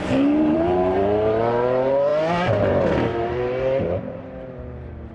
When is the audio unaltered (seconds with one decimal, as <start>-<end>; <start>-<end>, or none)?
2.1-2.7